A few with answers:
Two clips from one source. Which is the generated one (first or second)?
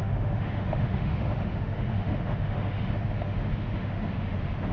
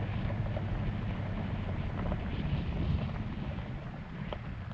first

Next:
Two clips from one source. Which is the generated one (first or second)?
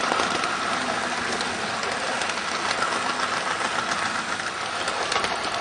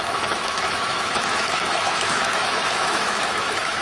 second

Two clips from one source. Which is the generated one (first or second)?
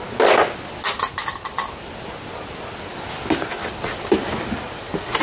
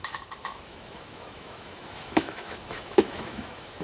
second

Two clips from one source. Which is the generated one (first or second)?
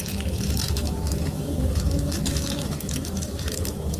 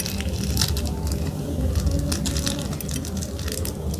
first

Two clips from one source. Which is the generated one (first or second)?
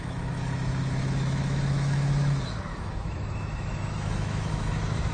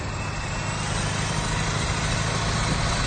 first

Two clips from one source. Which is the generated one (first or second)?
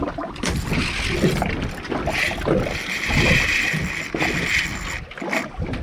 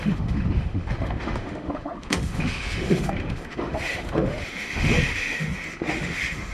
second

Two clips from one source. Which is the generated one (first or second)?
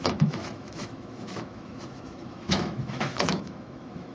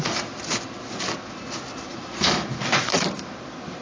first